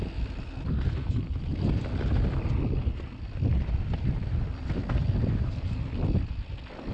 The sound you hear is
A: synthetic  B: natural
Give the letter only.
B